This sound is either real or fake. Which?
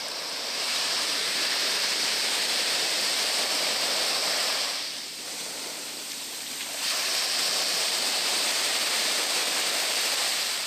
fake